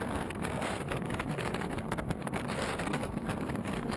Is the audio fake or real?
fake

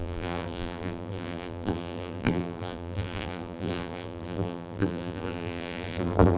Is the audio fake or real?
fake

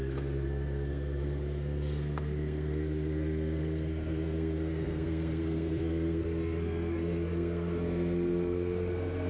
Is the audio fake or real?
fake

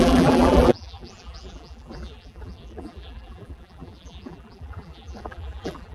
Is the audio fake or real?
fake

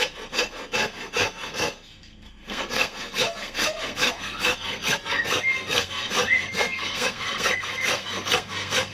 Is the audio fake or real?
fake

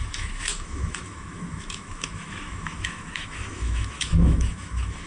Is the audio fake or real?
fake